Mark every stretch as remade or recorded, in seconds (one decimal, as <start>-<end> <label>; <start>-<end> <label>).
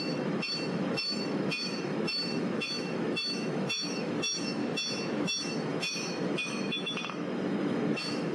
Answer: 0.0-4.6 remade; 4.6-5.2 recorded; 5.2-8.3 remade